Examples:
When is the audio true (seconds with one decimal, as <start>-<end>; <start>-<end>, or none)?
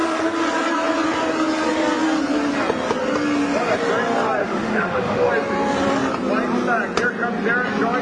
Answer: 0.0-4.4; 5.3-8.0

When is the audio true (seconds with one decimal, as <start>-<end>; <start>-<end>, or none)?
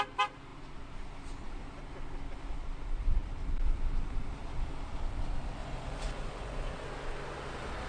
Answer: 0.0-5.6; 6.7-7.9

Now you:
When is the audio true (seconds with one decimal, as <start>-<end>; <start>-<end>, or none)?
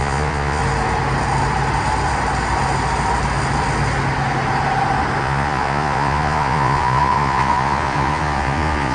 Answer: 0.6-5.2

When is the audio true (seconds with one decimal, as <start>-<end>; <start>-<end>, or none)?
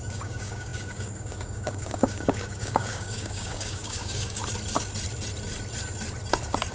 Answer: 4.4-6.7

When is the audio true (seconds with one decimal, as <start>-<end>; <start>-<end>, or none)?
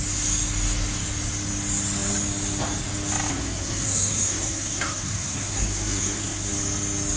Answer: 0.0-3.3; 6.5-7.2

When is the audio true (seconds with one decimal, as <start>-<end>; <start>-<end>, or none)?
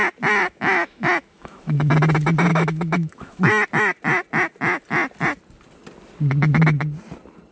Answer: 0.0-0.4; 1.9-2.5; 3.4-7.5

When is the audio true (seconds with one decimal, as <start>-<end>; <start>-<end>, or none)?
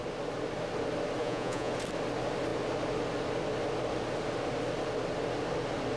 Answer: 0.0-1.2; 1.7-6.0